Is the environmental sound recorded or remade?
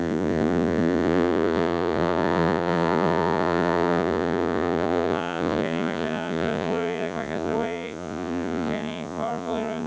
remade